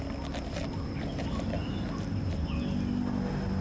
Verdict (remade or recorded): recorded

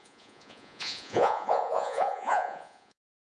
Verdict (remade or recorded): remade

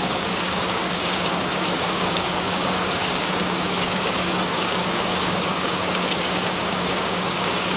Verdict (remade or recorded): remade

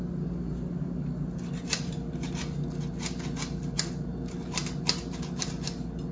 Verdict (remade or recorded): recorded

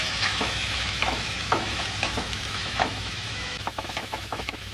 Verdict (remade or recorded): remade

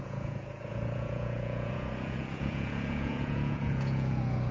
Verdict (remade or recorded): remade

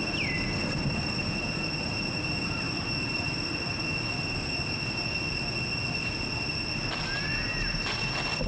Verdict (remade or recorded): recorded